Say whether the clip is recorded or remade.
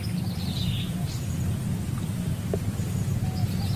recorded